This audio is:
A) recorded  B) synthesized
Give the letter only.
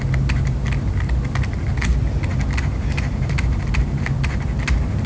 A